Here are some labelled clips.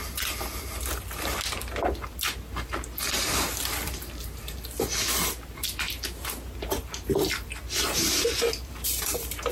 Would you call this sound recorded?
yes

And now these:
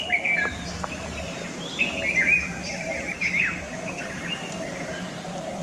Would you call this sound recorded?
yes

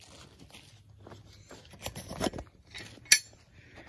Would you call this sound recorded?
yes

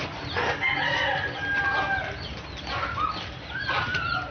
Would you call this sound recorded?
yes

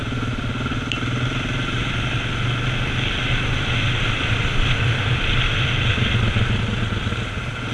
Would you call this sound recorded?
yes